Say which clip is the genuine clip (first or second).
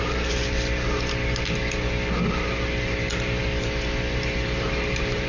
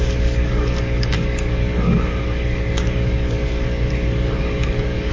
first